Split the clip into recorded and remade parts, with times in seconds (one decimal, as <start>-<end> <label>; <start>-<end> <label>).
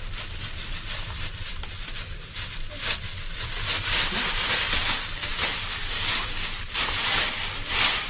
0.0-8.1 recorded